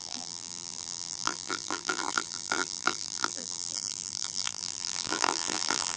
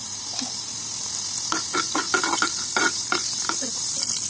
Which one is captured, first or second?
second